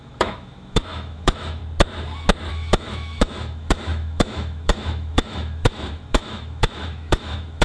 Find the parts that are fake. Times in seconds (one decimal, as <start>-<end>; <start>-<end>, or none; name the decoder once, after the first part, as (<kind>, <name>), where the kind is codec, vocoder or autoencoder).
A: 0.0-1.6 (autoencoder, DAC-VAE); 2.5-7.6